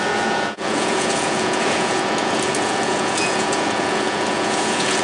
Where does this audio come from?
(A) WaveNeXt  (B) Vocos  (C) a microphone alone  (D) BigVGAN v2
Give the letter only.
B